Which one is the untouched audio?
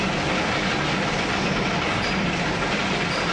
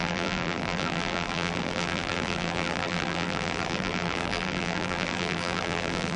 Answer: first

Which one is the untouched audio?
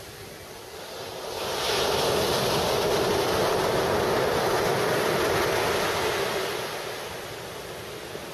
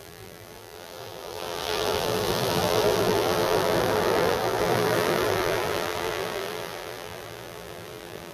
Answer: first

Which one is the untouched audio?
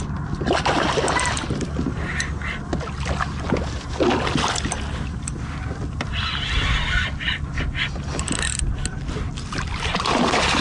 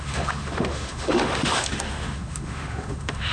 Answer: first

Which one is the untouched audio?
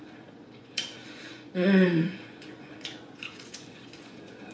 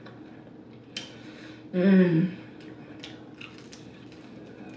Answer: second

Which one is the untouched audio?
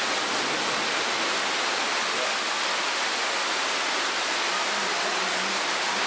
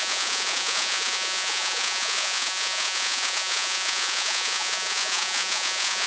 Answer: first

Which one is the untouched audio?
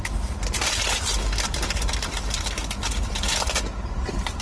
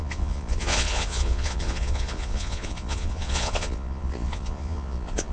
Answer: first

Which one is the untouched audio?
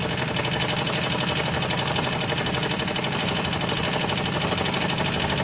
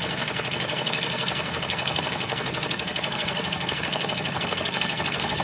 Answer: first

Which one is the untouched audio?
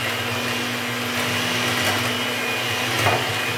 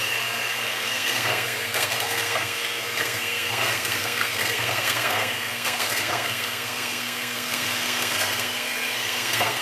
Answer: first